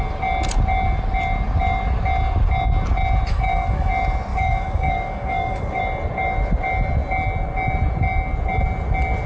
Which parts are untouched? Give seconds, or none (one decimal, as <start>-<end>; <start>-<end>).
0.0-3.3; 3.9-4.3; 5.8-9.3